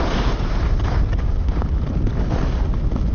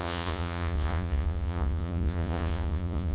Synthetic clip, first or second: second